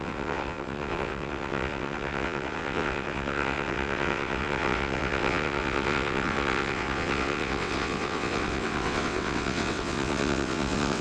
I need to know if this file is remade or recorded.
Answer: remade